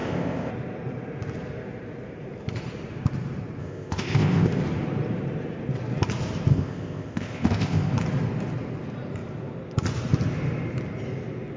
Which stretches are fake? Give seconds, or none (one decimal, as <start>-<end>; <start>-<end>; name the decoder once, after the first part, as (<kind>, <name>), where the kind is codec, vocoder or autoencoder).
0.0-0.5 (codec, ZipCodec); 3.6-4.6; 6.5-7.9